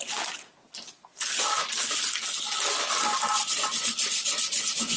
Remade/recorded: recorded